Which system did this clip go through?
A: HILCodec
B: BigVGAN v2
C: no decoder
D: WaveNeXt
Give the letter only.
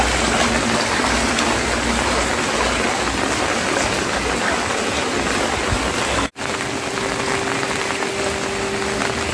C